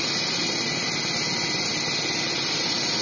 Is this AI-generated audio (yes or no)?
no